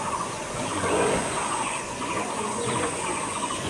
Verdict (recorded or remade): remade